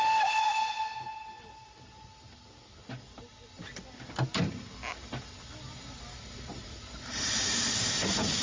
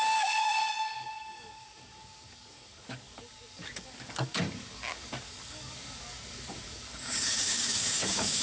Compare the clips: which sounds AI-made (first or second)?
second